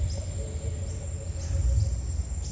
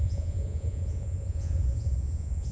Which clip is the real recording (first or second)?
first